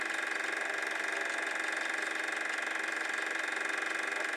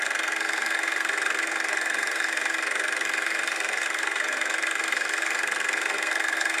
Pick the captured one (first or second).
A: first